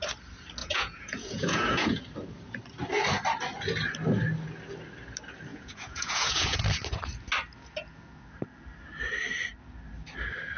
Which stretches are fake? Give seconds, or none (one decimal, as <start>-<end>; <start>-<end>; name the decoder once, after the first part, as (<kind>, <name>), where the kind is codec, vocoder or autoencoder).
0.6-2.0 (vocoder, Vocos); 5.5-6.6